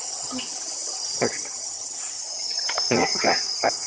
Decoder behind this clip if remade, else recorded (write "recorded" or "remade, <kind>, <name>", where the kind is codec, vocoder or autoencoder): remade, vocoder, HiFi-GAN